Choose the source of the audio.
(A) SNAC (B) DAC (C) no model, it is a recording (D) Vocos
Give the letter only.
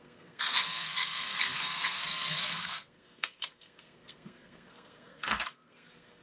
A